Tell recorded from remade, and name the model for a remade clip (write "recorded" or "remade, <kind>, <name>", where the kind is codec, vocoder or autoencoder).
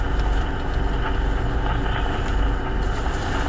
recorded